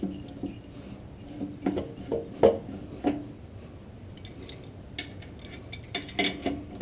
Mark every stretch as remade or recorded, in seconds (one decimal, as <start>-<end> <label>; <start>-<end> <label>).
0.0-6.8 recorded